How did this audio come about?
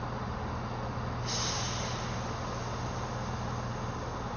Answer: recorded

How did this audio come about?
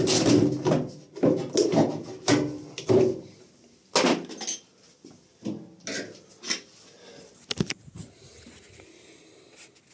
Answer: recorded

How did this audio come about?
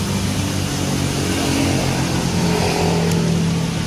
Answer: recorded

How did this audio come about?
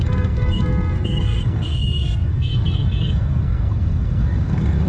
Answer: remade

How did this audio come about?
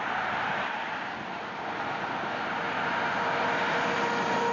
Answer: recorded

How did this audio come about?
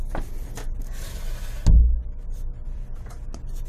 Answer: recorded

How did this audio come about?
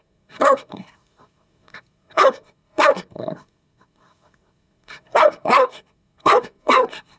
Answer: remade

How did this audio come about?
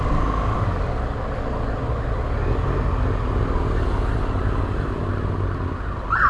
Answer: recorded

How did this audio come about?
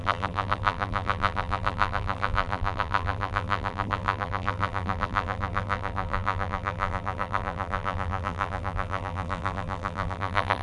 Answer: remade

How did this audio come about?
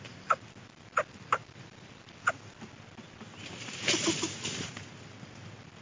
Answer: recorded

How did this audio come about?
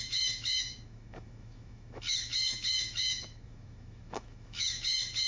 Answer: remade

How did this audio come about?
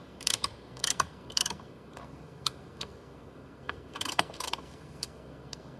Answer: remade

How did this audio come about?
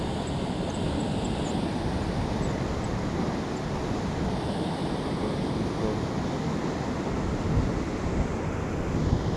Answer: recorded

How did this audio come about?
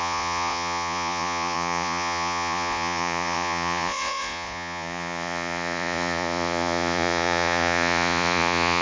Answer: remade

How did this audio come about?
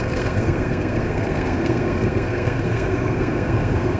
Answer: remade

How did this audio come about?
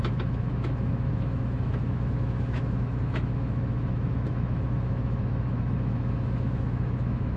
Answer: remade